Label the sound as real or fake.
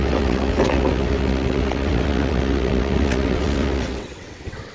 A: fake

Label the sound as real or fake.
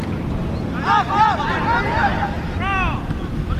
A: real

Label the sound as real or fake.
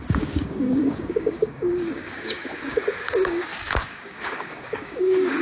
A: fake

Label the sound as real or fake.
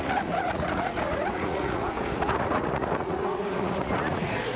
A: fake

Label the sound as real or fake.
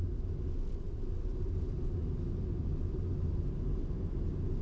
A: real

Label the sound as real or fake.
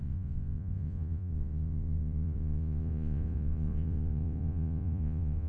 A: fake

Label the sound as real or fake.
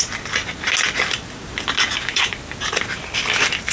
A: real